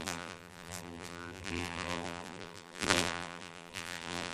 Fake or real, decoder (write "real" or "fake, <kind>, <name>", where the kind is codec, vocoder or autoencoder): fake, vocoder, BigVGAN v2